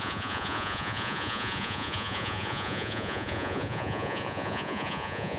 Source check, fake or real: fake